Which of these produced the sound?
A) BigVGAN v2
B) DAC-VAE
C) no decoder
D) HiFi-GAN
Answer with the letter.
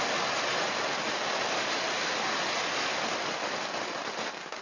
C